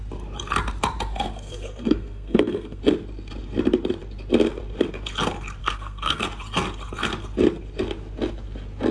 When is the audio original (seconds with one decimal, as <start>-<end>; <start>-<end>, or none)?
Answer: 0.0-1.3; 2.8-5.6; 6.2-8.9